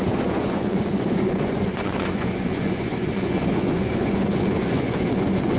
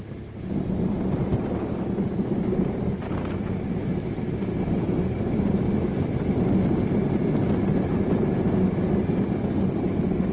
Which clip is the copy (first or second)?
first